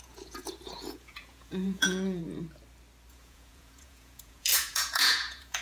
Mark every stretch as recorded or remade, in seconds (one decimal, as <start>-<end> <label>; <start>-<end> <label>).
0.0-2.2 remade; 2.2-3.1 recorded; 3.1-5.6 remade